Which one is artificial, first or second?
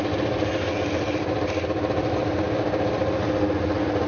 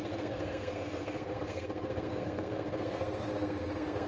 second